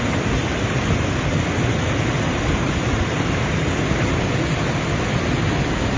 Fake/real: real